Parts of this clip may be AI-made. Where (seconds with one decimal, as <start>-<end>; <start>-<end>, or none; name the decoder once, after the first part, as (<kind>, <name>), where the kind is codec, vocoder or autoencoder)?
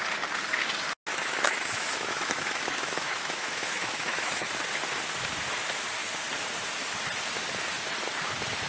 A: 1.1-4.5 (autoencoder, DAC-VAE)